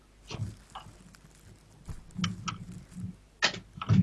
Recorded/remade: recorded